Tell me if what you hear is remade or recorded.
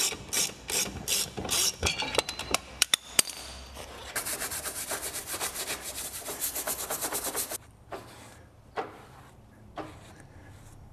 remade